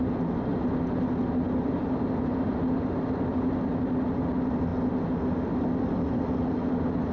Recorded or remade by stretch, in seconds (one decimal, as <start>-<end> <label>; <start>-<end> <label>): 0.0-7.1 recorded